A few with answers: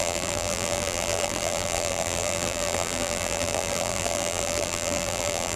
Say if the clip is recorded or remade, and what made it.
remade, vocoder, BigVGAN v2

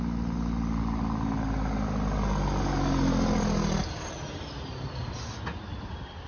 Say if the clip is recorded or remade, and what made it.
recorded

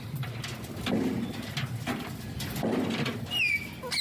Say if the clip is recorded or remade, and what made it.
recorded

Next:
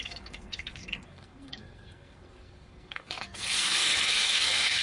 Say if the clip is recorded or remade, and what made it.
remade, codec, SNAC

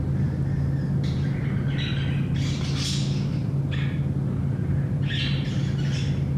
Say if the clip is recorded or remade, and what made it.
recorded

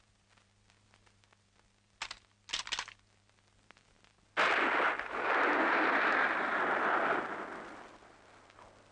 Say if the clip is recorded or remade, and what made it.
recorded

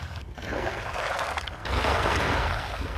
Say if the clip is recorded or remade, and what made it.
remade, codec, SNAC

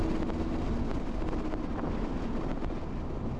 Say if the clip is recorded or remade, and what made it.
recorded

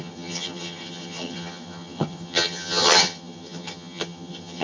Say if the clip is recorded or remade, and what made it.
remade, vocoder, HiFi-GAN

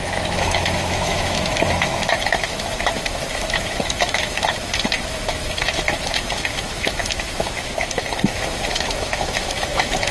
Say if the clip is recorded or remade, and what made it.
remade, autoencoder, DAC-VAE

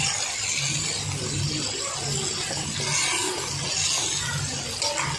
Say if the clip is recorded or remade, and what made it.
recorded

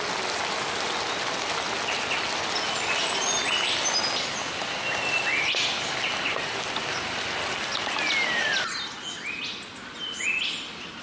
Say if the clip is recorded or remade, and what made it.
recorded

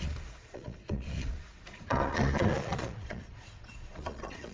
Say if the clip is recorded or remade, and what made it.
remade, vocoder, Vocos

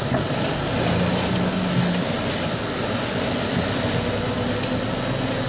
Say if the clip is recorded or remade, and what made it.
recorded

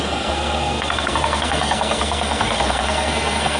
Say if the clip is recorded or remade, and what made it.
remade, codec, SNAC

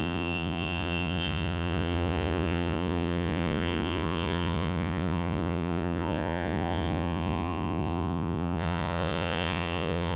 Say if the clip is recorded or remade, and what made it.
remade, vocoder, Vocos